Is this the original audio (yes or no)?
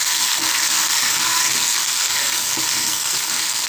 no